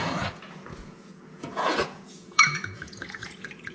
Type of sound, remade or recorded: remade